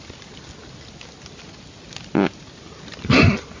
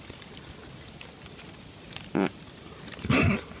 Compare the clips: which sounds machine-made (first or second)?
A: second